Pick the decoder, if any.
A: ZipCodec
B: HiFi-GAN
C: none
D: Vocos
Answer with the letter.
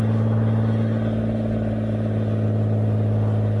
C